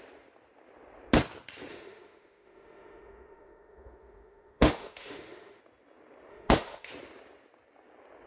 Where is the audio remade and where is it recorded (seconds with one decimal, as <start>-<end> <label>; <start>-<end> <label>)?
0.0-1.7 recorded; 1.7-5.6 remade; 5.6-6.3 recorded; 6.3-6.9 remade; 6.9-8.3 recorded